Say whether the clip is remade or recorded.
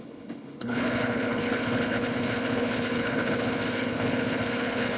remade